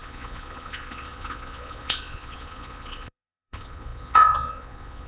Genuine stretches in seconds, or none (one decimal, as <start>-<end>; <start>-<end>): none